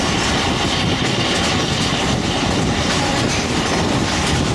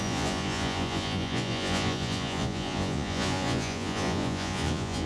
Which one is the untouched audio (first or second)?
first